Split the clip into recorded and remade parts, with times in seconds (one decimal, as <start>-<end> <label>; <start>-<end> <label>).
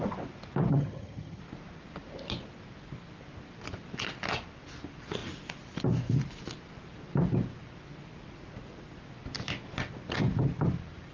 0.0-0.7 recorded; 0.7-1.4 remade; 1.4-11.1 recorded